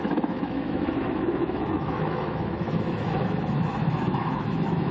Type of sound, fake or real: fake